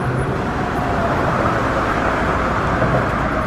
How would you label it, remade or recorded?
recorded